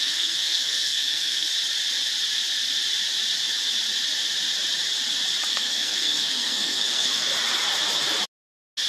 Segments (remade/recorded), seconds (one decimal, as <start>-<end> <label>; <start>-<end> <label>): 0.0-1.5 remade; 1.5-5.5 recorded; 5.5-7.3 remade; 7.3-8.9 recorded